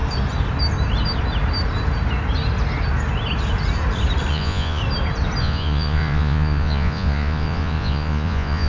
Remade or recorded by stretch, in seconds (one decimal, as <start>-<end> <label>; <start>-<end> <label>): 0.0-4.3 recorded; 4.3-4.8 remade; 4.8-5.4 recorded; 5.4-8.7 remade